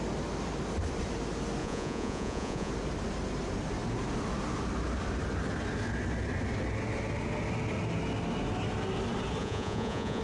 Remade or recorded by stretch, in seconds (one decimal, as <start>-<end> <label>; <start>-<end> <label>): 0.0-1.6 recorded; 1.6-2.7 remade; 2.7-9.4 recorded; 9.4-10.2 remade